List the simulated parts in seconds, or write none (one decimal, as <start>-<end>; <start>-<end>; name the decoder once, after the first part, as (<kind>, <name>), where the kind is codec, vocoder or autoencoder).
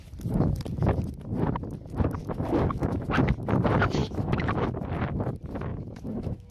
2.2-3.0 (autoencoder, DAC-VAE); 4.0-4.7; 5.7-6.5